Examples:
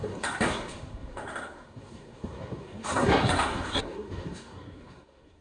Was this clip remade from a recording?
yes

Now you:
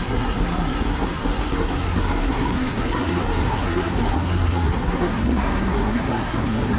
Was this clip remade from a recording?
yes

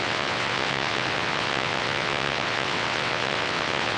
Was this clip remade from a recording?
yes